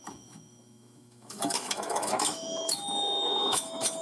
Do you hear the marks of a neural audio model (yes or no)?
yes